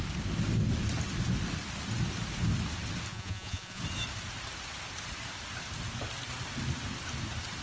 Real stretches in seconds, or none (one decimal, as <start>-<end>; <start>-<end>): 0.0-3.1; 3.8-7.6